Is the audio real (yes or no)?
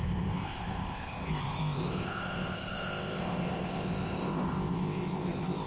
no